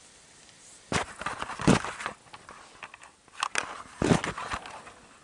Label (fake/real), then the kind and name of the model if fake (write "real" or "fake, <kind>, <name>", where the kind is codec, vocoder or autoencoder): real